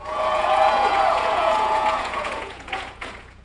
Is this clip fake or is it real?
fake